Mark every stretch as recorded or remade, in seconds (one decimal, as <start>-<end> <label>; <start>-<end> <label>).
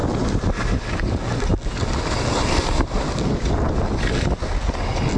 0.0-5.2 recorded